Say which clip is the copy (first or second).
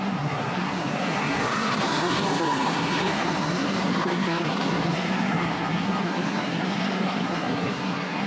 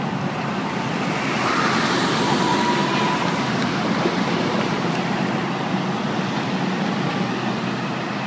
first